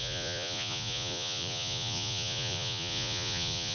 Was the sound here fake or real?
fake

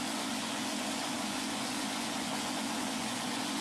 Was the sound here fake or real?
fake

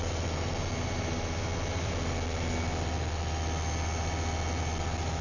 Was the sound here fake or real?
real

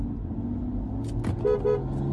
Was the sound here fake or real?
real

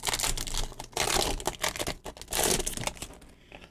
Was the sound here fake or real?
real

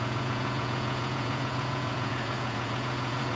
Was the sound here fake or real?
fake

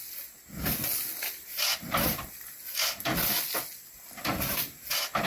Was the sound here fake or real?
real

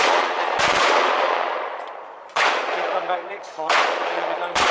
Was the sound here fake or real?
fake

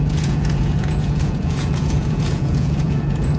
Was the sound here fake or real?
fake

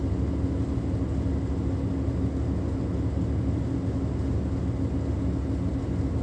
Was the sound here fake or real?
real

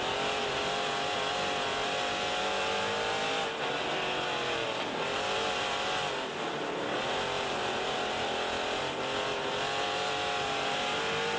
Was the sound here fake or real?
real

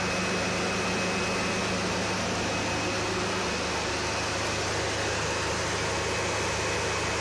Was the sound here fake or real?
real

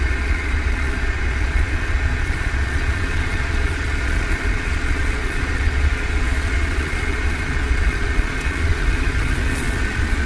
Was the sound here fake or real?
fake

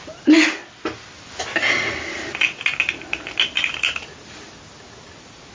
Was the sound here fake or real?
real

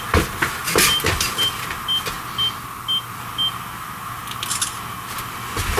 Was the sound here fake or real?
real